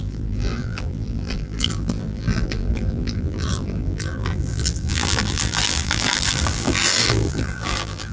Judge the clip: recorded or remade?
remade